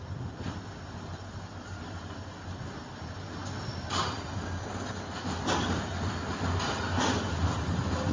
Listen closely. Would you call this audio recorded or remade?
recorded